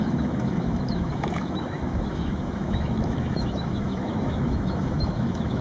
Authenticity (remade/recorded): remade